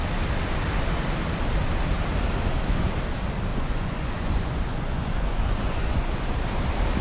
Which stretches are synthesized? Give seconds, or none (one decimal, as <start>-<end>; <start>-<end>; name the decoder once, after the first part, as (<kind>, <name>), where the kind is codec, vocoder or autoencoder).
3.5-6.4 (vocoder, Vocos)